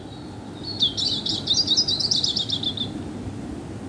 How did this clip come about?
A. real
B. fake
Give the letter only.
A